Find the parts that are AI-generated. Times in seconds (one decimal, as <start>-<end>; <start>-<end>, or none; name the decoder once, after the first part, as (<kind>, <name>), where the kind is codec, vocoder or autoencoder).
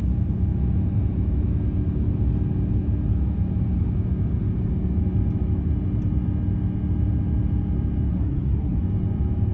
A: 8.1-8.8 (codec, SNAC)